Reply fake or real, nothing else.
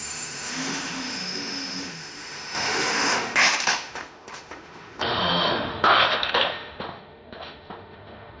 fake